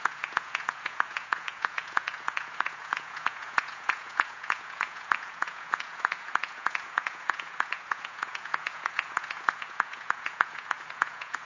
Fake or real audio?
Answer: fake